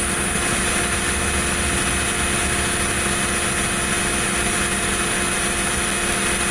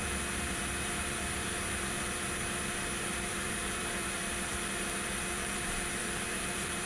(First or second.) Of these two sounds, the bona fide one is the first